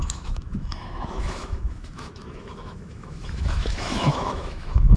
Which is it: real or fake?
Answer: fake